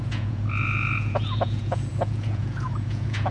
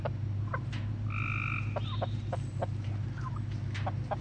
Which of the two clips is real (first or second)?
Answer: second